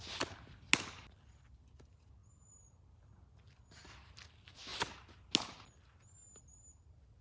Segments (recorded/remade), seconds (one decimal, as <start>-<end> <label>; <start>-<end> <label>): 0.0-7.2 recorded